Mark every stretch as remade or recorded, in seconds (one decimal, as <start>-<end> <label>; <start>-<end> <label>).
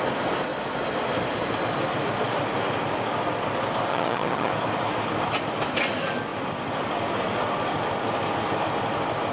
0.0-3.9 recorded; 3.9-4.5 remade; 4.5-9.3 recorded